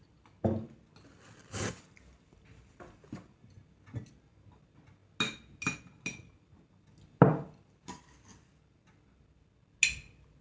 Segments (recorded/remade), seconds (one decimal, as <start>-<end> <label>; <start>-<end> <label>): 0.0-10.4 recorded

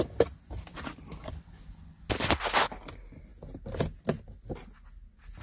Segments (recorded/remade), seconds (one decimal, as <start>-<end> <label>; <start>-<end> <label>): 0.0-0.7 recorded; 0.7-1.2 remade; 1.2-5.4 recorded

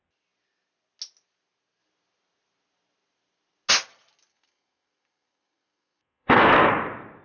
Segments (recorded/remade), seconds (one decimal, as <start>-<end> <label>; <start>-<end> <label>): 0.0-4.3 recorded; 4.3-6.7 remade; 6.7-7.2 recorded

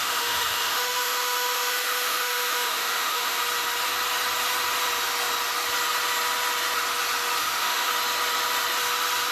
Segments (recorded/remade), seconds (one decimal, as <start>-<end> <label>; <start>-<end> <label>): 0.0-3.4 remade; 3.4-7.4 recorded; 7.4-7.9 remade; 7.9-9.3 recorded

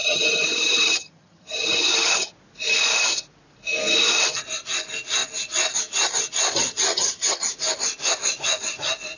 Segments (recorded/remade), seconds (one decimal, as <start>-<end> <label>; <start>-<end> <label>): 0.0-2.3 remade; 2.3-6.9 recorded; 6.9-7.5 remade; 7.5-9.2 recorded

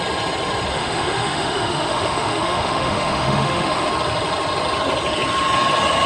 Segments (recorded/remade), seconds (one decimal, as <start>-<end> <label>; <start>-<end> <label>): 0.0-0.7 recorded; 0.7-3.9 remade; 3.9-6.1 recorded

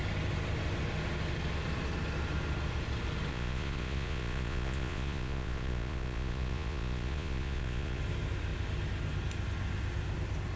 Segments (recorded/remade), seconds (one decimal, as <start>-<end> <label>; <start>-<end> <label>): 0.0-3.3 recorded; 3.3-8.0 remade; 8.0-10.6 recorded